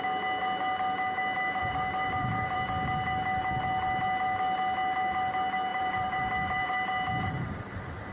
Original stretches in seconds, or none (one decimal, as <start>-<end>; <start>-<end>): 0.0-1.6; 2.6-5.7; 7.1-8.1